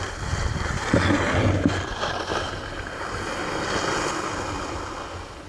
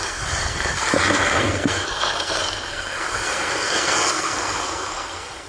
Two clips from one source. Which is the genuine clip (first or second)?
first